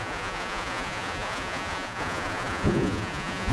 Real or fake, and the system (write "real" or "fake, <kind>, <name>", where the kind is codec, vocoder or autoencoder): fake, vocoder, Vocos